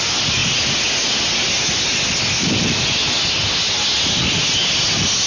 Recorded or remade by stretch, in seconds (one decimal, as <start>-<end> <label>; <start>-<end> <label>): 0.0-5.3 recorded